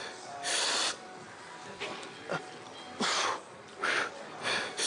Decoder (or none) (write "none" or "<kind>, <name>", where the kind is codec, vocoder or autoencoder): none